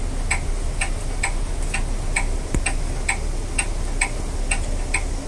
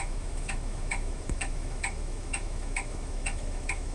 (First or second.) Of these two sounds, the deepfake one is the second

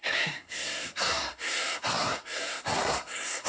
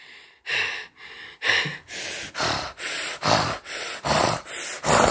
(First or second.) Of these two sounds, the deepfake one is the first